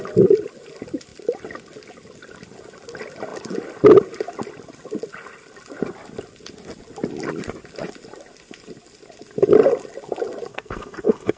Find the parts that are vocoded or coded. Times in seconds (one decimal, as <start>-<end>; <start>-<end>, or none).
10.5-11.4